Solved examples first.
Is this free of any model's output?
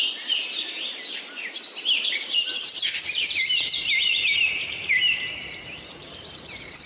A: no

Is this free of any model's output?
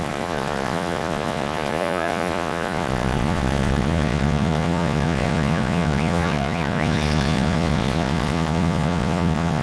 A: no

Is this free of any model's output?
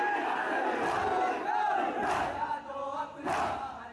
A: yes